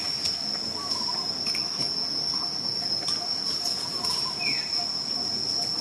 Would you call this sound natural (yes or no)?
yes